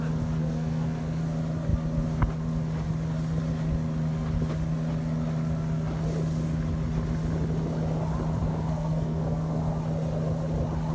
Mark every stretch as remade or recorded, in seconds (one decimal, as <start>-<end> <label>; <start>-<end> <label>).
0.0-0.4 recorded; 0.4-1.2 remade; 1.2-8.5 recorded; 8.5-9.7 remade; 9.7-10.9 recorded